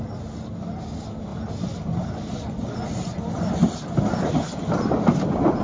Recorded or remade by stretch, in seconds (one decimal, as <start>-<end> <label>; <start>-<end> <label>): 0.0-5.6 recorded